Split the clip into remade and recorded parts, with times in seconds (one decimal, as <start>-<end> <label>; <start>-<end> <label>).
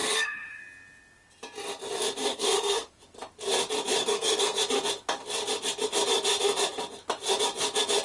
0.0-0.6 remade; 0.6-2.3 recorded; 2.3-2.9 remade; 2.9-4.0 recorded; 4.0-4.6 remade; 4.6-8.0 recorded